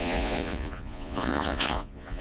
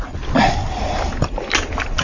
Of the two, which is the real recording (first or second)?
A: second